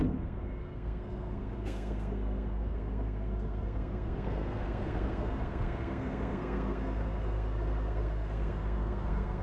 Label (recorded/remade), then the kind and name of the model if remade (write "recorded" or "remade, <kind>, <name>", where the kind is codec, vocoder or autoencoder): remade, codec, SNAC